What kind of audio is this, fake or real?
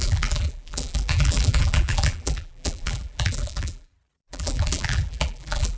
fake